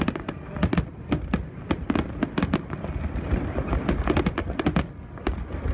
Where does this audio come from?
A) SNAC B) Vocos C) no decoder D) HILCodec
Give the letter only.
C